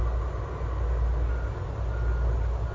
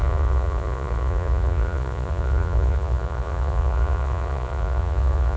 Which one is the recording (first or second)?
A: first